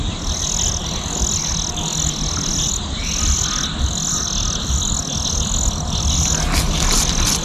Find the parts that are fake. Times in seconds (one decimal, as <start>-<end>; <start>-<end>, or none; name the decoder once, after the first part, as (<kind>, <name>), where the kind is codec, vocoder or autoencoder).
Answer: none